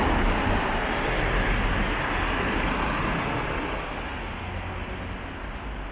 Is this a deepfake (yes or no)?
no